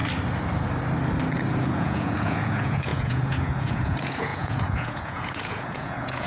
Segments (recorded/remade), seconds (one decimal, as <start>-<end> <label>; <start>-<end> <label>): 0.0-1.6 recorded; 1.6-6.3 remade